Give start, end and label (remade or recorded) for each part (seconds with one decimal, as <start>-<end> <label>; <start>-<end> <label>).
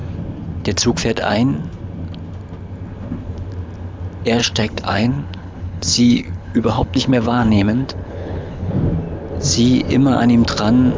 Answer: 0.0-4.4 recorded; 4.4-8.7 remade; 8.7-11.0 recorded